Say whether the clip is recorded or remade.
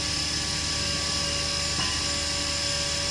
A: recorded